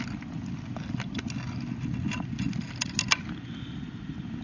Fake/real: real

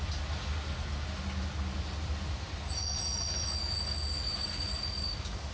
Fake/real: real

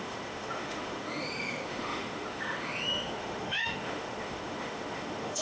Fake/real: fake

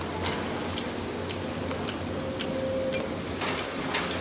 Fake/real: real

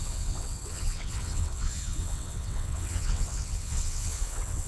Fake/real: fake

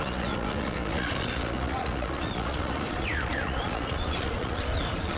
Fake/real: fake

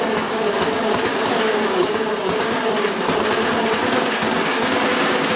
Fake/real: fake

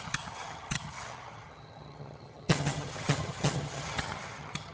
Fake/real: fake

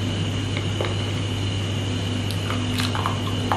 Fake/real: real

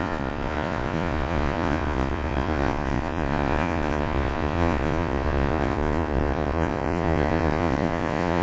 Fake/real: fake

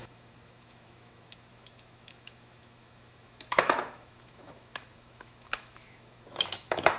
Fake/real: fake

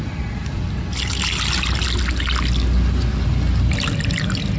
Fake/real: real